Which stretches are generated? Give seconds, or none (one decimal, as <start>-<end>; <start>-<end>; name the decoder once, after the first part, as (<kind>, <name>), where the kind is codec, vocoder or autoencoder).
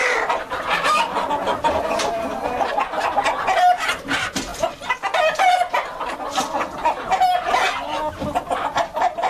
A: 0.0-2.8 (vocoder, BigVGAN v2)